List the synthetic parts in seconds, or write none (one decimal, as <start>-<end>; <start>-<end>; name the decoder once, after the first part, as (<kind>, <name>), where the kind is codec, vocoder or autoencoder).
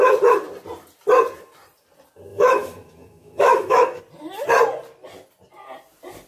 2.3-4.0 (autoencoder, DAC-VAE)